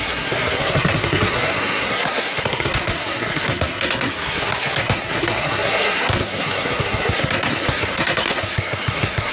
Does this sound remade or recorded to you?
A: remade